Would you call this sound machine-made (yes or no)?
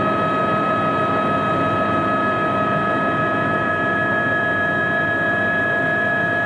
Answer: no